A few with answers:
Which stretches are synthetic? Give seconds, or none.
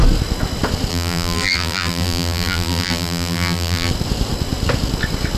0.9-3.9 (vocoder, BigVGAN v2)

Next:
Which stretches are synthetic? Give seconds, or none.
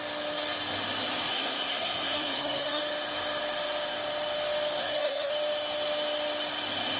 1.3-2.8 (codec, SNAC); 4.8-5.3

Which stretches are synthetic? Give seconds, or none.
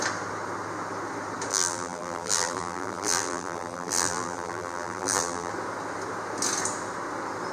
1.5-5.5 (vocoder, BigVGAN v2)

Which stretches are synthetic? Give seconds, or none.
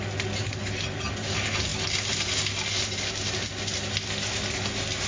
none